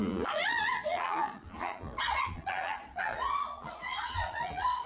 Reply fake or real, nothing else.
fake